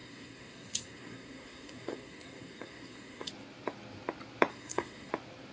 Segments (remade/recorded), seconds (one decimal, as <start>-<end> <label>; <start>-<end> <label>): 0.0-3.3 remade; 3.3-4.5 recorded; 4.5-5.1 remade; 5.1-5.5 recorded